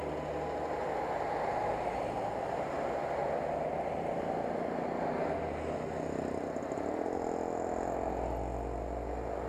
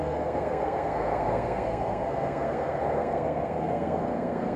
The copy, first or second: second